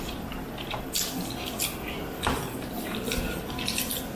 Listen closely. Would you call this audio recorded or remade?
recorded